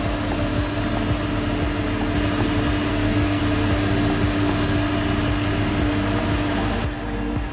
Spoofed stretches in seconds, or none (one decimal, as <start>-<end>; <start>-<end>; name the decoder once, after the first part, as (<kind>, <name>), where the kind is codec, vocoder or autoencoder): 2.9-3.4 (codec, SNAC)